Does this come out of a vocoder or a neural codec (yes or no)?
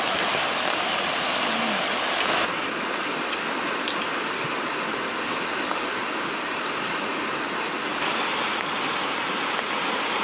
no